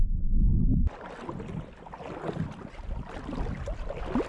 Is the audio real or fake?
real